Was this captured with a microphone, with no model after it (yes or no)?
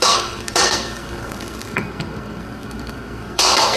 no